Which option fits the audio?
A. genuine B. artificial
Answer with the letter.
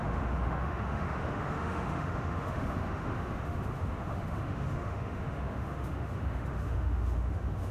B